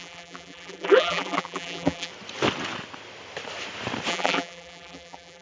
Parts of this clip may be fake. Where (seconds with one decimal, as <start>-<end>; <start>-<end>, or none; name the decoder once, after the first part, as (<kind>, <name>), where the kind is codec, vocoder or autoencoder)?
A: 0.0-2.1 (vocoder, BigVGAN v2); 4.1-5.4